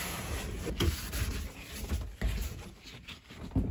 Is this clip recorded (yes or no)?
no